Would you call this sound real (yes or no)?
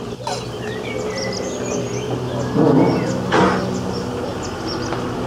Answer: yes